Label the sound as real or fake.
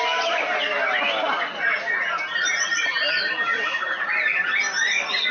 real